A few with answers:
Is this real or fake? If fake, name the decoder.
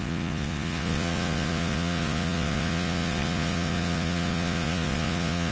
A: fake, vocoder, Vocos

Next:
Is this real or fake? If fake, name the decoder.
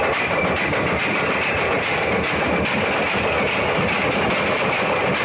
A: fake, vocoder, BigVGAN v2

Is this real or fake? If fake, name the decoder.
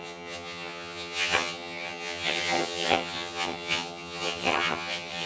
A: fake, vocoder, HiFi-GAN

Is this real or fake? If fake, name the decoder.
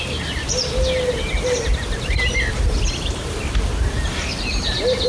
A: real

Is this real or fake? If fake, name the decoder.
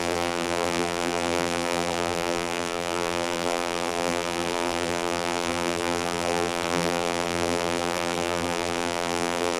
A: fake, vocoder, BigVGAN v2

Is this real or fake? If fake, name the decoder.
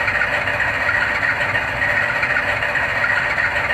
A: real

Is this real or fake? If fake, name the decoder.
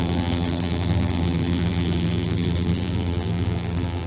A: fake, vocoder, BigVGAN v2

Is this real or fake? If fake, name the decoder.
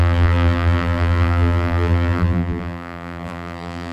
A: fake, vocoder, BigVGAN v2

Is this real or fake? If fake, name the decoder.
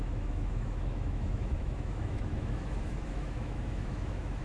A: fake, autoencoder, DAC-VAE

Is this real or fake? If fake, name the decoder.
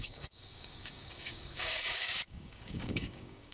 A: fake, codec, DAC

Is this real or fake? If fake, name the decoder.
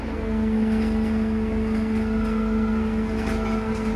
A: fake, codec, SNAC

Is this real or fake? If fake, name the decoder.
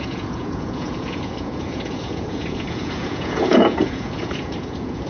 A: fake, vocoder, Vocos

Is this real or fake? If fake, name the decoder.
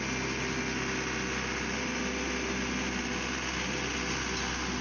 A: real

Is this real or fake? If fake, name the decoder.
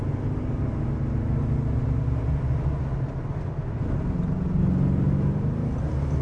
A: real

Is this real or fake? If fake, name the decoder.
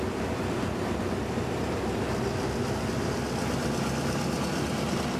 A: real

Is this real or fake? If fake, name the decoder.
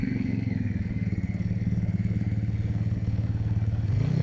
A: fake, codec, SNAC